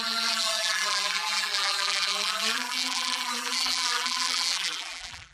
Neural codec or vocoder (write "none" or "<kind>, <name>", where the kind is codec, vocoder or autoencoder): vocoder, BigVGAN v2